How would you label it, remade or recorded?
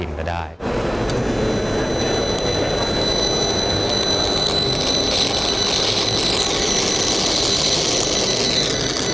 recorded